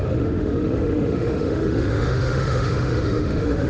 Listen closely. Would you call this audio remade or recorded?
remade